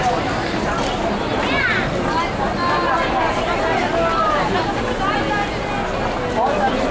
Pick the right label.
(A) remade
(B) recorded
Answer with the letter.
B